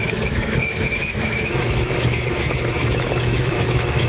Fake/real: fake